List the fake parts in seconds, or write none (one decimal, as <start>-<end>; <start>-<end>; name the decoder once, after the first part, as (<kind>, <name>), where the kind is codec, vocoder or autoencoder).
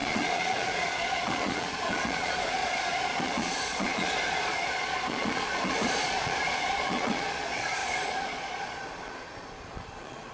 0.0-10.3 (vocoder, Vocos)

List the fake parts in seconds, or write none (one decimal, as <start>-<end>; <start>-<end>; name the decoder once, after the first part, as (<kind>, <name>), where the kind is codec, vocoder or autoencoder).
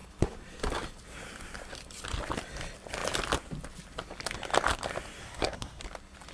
5.2-5.8 (codec, SNAC)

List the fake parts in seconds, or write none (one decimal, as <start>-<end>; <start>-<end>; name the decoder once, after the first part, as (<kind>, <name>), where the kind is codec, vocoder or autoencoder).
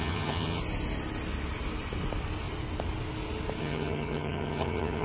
0.0-0.6 (vocoder, HiFi-GAN); 3.6-5.0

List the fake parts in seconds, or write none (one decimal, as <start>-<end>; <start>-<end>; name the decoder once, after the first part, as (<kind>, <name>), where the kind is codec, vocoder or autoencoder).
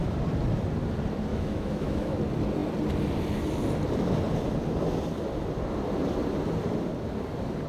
1.3-2.2 (autoencoder, DAC-VAE)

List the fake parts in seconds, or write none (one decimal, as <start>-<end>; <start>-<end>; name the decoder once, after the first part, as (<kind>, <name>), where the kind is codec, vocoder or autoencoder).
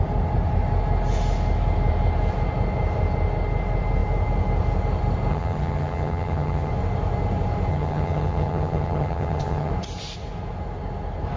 5.3-6.7 (vocoder, HiFi-GAN); 7.7-9.7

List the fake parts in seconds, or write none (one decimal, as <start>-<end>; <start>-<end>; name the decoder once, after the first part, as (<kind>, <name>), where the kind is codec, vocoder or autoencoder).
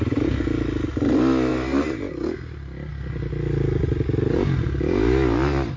none